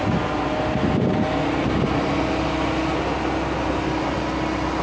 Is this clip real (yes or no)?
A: yes